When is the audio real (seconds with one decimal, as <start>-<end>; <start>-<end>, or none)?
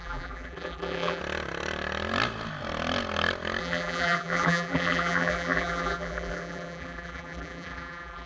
1.2-3.6